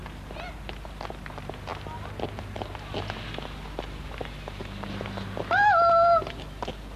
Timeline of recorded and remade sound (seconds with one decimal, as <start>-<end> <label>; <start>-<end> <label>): 0.0-7.0 recorded